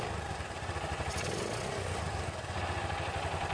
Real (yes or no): yes